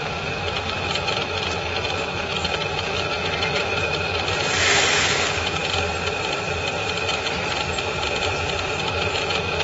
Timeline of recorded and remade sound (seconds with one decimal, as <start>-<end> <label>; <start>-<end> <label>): 0.0-5.6 remade; 5.6-8.8 recorded; 8.8-9.6 remade

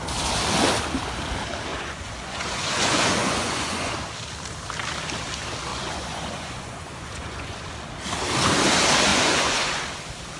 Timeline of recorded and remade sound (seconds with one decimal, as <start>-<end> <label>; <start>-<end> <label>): 0.0-1.7 recorded; 1.7-3.9 remade; 3.9-5.7 recorded; 5.7-7.7 remade; 7.7-9.1 recorded; 9.1-9.8 remade; 9.8-10.4 recorded